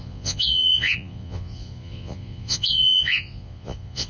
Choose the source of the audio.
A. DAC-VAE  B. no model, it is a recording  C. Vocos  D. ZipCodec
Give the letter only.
C